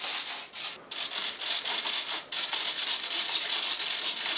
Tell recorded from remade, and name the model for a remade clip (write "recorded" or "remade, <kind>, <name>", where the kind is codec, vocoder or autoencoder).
recorded